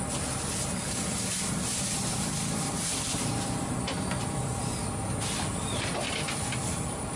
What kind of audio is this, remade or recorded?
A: remade